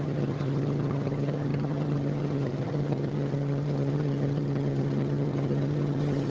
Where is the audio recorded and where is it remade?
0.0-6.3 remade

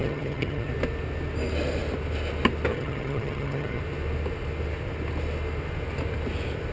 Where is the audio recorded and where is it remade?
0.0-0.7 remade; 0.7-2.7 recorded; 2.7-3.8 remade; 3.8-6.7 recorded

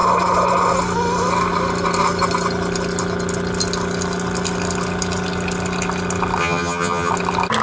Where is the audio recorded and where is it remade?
0.0-6.4 recorded; 6.4-7.1 remade; 7.1-7.6 recorded